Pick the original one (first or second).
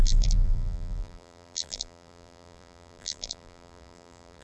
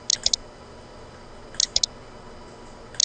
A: second